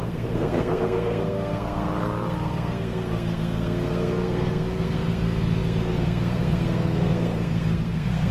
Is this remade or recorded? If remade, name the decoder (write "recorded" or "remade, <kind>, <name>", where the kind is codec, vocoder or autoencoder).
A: remade, codec, SNAC